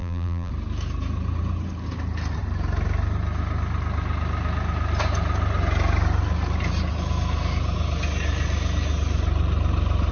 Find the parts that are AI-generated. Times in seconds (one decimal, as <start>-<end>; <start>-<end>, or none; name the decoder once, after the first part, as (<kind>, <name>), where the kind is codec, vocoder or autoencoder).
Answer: 0.0-0.5 (vocoder, BigVGAN v2)